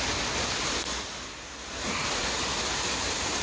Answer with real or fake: real